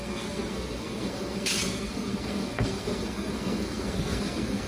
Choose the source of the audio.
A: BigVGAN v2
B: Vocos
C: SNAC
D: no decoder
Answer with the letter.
C